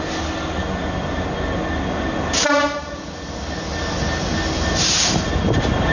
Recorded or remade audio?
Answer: recorded